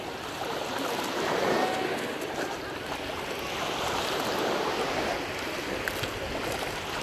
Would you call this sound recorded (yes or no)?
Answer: yes